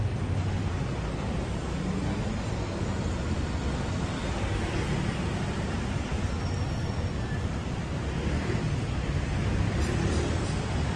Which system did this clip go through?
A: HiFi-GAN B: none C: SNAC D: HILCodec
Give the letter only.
B